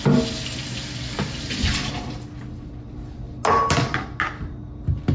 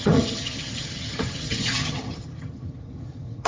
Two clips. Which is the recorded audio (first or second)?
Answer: first